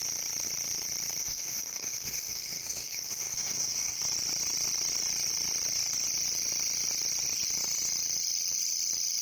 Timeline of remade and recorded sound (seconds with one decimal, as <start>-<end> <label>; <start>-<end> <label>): 0.0-1.2 recorded; 1.2-4.0 remade; 4.0-9.2 recorded

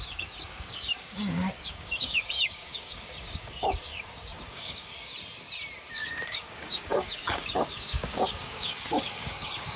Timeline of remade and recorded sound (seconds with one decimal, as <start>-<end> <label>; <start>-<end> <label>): 0.0-5.1 remade; 5.1-5.9 recorded; 5.9-9.8 remade

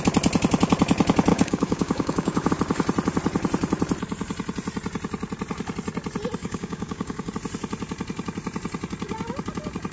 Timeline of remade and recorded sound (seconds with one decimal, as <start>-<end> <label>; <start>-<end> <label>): 0.0-1.3 recorded; 1.3-2.5 remade; 2.5-6.4 recorded; 6.4-7.3 remade; 7.3-9.9 recorded

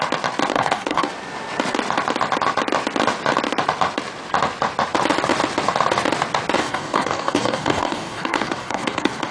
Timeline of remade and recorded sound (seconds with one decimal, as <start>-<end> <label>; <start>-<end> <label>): 0.0-0.5 recorded; 0.5-1.1 remade; 1.1-6.6 recorded; 6.6-9.3 remade

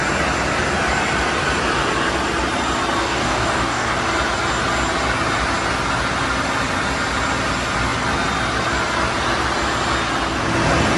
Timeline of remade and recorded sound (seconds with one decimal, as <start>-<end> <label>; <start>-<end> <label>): 0.0-3.0 recorded; 3.0-4.0 remade; 4.0-11.0 recorded

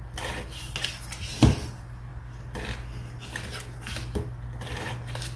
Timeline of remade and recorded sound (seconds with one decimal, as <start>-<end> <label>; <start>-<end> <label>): 0.0-5.4 recorded

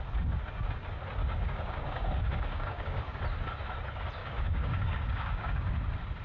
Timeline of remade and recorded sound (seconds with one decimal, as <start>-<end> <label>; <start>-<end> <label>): 0.0-1.2 recorded; 1.2-3.2 remade; 3.2-4.2 recorded; 4.2-5.7 remade; 5.7-6.2 recorded